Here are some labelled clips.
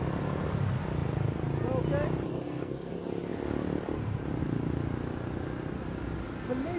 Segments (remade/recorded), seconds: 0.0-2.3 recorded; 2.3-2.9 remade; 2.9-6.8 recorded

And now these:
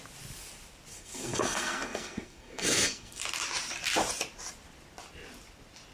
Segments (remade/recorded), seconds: 0.0-0.9 recorded; 0.9-3.2 remade; 3.2-5.9 recorded

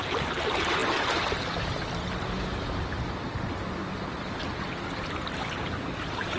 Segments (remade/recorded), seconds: 0.0-0.8 remade; 0.8-2.1 recorded; 2.1-3.8 remade; 3.8-5.0 recorded; 5.0-6.4 remade

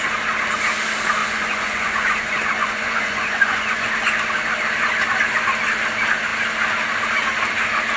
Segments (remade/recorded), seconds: 0.0-1.2 recorded; 1.2-3.9 remade; 3.9-8.0 recorded

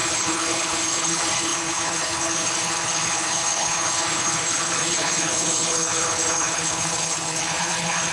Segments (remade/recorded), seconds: 0.0-8.1 remade